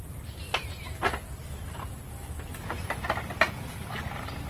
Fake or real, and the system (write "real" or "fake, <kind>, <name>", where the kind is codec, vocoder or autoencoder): real